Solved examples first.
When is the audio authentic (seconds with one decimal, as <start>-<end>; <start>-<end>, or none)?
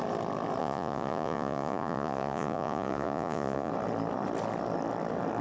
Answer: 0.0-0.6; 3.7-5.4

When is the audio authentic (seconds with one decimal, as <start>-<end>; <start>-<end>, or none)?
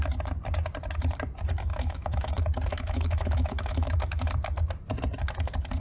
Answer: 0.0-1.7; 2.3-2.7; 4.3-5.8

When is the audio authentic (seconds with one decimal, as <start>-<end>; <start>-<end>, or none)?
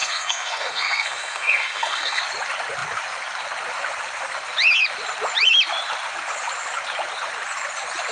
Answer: 2.2-8.1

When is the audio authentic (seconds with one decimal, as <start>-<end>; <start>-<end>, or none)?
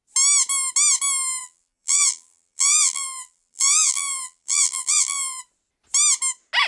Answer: 0.0-1.4; 5.4-6.7